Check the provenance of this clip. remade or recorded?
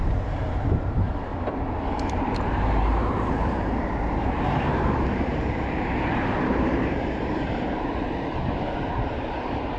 remade